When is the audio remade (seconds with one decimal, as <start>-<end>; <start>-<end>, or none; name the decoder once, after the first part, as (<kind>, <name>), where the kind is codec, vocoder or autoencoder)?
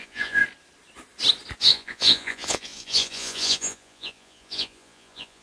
0.0-0.4 (vocoder, Vocos); 1.6-5.4